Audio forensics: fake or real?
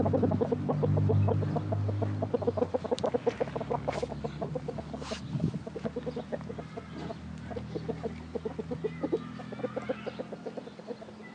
real